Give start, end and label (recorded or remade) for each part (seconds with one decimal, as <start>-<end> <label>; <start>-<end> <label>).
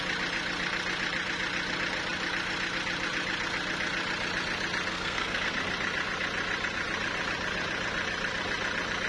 0.0-4.9 recorded; 4.9-5.5 remade; 5.5-9.1 recorded